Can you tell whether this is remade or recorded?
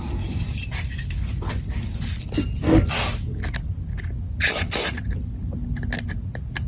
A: recorded